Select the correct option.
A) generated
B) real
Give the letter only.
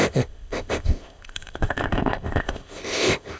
A